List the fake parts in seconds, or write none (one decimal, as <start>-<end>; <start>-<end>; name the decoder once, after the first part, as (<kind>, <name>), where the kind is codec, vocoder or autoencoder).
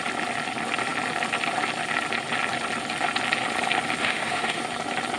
4.0-4.6 (autoencoder, DAC-VAE)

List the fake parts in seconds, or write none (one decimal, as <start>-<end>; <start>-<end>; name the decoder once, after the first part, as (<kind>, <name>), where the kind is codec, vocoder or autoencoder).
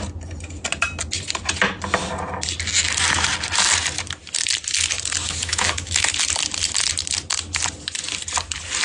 5.2-6.1 (autoencoder, DAC-VAE)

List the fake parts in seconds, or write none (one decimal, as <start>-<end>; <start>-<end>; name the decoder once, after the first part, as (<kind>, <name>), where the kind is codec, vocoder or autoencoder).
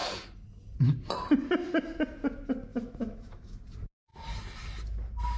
2.7-3.6 (autoencoder, DAC-VAE)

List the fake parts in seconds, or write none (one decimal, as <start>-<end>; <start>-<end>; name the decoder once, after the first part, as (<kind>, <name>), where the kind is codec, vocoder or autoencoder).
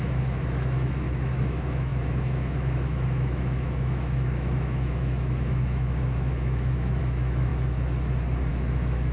0.0-7.5 (autoencoder, DAC-VAE); 8.5-9.1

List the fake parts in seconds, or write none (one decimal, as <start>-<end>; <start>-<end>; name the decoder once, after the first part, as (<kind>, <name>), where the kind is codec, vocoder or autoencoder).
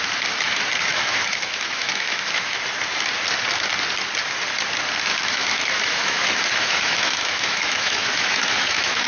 0.9-2.6 (autoencoder, DAC-VAE); 5.1-9.1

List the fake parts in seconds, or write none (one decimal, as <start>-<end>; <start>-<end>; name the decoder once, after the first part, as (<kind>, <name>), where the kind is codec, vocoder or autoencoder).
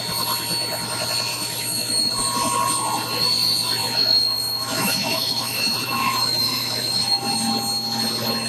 1.3-2.1 (autoencoder, DAC-VAE); 3.8-7.2